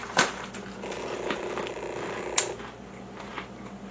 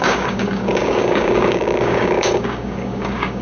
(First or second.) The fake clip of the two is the second